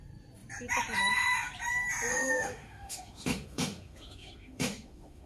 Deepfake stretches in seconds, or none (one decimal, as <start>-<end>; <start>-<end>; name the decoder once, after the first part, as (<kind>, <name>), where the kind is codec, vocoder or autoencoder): 2.1-5.3 (autoencoder, DAC-VAE)